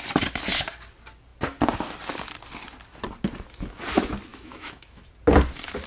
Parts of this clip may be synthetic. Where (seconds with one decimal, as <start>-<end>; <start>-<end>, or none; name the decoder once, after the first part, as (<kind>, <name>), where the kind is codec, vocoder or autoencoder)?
4.3-5.0 (autoencoder, DAC-VAE)